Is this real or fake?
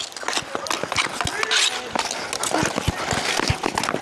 real